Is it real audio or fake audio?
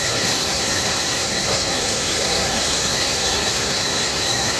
fake